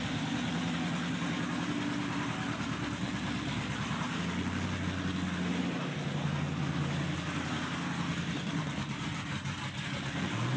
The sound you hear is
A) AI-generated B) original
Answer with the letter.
B